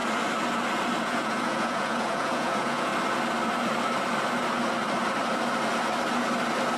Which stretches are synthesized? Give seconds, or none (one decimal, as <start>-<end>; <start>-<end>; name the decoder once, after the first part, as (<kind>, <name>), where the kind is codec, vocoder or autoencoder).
1.0-2.9 (vocoder, Vocos)